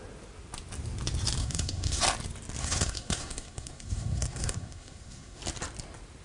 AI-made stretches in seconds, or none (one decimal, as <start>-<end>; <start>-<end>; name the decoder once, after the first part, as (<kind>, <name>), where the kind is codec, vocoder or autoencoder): 1.4-2.0 (codec, SNAC); 2.6-5.4

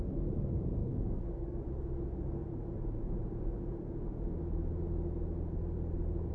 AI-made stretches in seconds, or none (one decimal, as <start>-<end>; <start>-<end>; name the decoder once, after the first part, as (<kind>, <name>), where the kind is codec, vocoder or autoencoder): 0.8-1.6 (codec, SNAC)

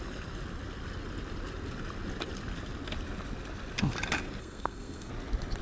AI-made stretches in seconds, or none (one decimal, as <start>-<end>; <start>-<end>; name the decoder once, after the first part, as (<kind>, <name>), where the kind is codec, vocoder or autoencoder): 4.4-5.1 (codec, SNAC)

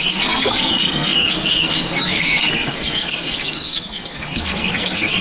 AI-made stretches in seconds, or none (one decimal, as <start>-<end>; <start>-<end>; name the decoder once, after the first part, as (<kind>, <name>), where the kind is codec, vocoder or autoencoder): 0.0-5.2 (codec, SNAC)

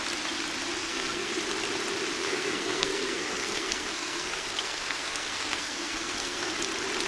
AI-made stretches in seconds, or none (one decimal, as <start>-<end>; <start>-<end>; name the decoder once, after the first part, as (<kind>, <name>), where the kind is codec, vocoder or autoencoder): 0.8-1.4 (codec, SNAC); 2.2-6.5

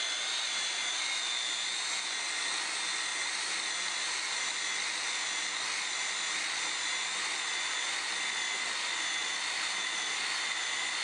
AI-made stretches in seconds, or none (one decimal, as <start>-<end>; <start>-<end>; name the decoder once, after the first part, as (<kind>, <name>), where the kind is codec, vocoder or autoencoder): none